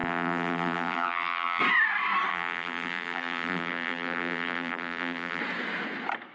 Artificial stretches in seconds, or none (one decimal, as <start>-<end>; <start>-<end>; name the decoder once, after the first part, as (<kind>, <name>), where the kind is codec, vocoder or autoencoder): 0.0-1.6 (vocoder, BigVGAN v2); 2.3-5.4